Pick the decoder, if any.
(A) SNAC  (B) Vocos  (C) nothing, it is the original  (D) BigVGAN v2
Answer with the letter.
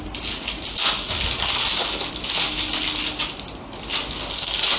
C